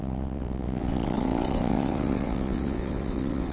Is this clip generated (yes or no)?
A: yes